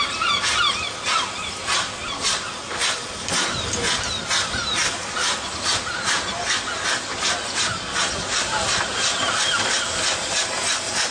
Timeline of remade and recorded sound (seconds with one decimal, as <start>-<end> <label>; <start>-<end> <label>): 0.0-8.3 recorded; 8.3-11.1 remade